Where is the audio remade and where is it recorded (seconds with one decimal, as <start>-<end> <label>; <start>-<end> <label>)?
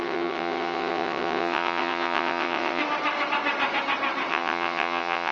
0.0-2.8 remade; 2.8-4.3 recorded; 4.3-5.3 remade